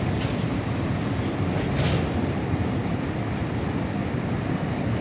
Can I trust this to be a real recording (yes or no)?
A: yes